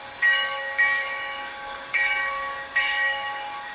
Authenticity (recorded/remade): remade